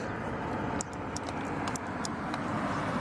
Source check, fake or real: real